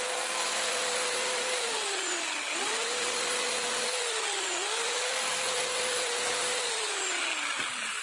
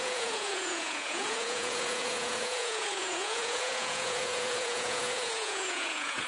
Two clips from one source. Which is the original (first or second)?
first